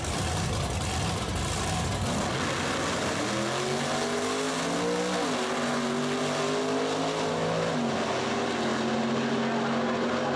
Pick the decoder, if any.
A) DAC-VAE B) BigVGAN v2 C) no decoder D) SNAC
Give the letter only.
C